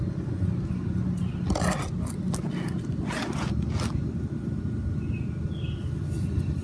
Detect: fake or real real